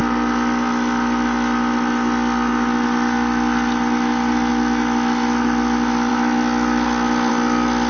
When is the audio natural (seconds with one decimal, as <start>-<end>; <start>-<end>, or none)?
0.0-7.9